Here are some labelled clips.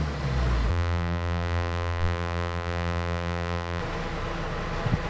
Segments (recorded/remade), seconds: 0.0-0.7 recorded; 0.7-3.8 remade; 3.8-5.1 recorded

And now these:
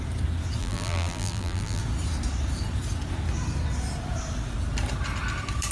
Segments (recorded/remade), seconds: 0.0-0.6 recorded; 0.6-1.8 remade; 1.8-5.7 recorded

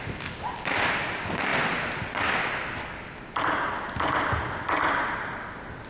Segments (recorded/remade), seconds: 0.0-5.9 recorded

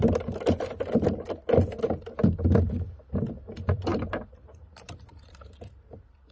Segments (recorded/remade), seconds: 0.0-3.9 recorded; 3.9-6.3 remade

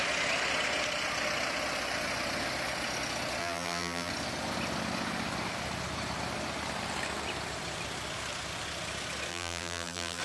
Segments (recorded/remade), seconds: 0.0-3.4 recorded; 3.4-4.1 remade; 4.1-9.3 recorded; 9.3-10.2 remade

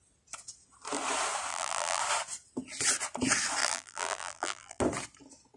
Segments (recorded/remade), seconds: 0.0-1.5 recorded; 1.5-2.0 remade; 2.0-3.6 recorded; 3.6-4.8 remade; 4.8-5.6 recorded

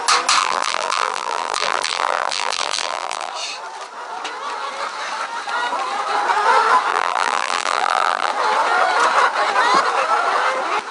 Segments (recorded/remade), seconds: 0.0-0.4 recorded; 0.4-3.3 remade; 3.3-6.9 recorded; 6.9-8.3 remade; 8.3-10.9 recorded